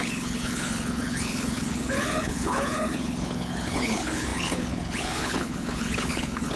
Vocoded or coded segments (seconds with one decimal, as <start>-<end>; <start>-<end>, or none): 0.0-6.6